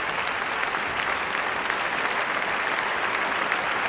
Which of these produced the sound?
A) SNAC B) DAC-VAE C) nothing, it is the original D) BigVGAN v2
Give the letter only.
C